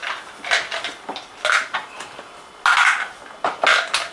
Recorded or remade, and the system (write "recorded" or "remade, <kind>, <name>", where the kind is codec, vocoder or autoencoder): recorded